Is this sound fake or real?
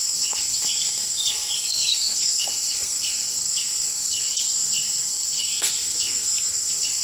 fake